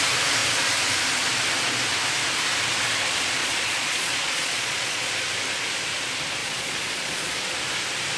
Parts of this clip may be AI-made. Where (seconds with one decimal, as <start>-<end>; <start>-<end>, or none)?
3.4-5.1; 6.4-7.4